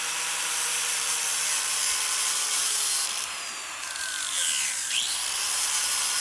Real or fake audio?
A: fake